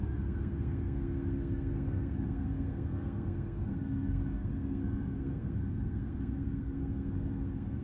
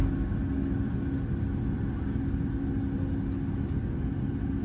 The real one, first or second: second